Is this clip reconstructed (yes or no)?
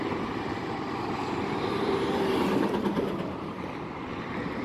no